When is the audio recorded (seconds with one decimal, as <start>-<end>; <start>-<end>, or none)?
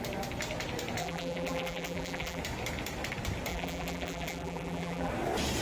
0.0-1.0; 2.4-3.5; 5.1-5.6